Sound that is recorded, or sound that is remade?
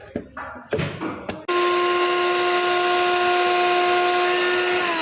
recorded